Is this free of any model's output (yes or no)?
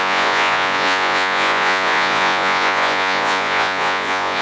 no